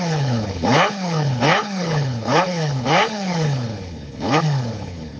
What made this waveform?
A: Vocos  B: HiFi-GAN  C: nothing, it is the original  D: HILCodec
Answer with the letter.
D